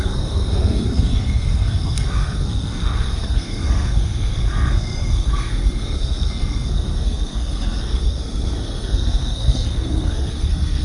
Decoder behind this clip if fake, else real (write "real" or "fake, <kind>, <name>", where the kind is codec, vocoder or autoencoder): fake, codec, SNAC